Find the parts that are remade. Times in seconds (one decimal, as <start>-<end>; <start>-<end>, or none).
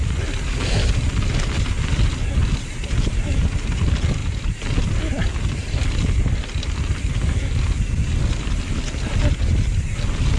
none